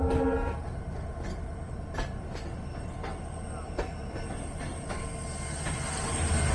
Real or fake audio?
real